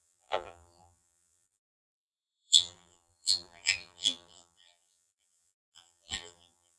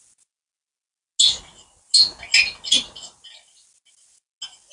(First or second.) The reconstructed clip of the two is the first